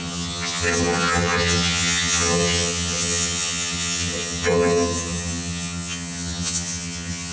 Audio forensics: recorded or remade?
remade